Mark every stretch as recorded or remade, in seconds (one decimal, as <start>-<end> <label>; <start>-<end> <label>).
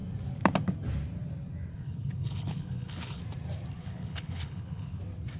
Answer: 0.0-1.7 recorded; 1.7-3.2 remade; 3.2-3.8 recorded; 3.8-5.0 remade; 5.0-5.4 recorded